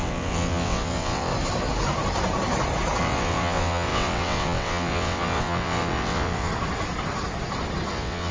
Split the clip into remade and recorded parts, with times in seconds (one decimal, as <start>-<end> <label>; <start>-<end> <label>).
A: 0.0-1.3 remade; 1.3-3.0 recorded; 3.0-6.5 remade; 6.5-7.9 recorded; 7.9-8.3 remade